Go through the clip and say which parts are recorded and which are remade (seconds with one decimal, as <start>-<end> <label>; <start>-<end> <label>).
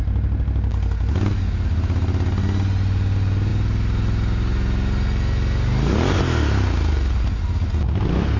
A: 0.0-8.4 recorded